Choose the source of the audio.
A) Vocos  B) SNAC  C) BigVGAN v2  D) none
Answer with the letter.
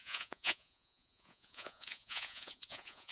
A